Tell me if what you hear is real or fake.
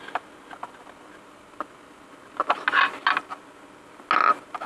real